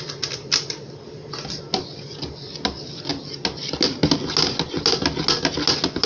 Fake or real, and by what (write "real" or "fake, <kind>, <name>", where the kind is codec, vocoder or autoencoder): real